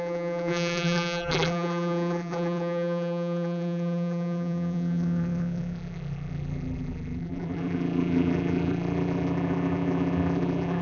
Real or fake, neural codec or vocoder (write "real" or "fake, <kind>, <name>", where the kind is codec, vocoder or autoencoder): fake, vocoder, BigVGAN v2